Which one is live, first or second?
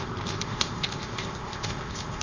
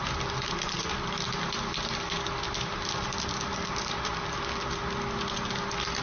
second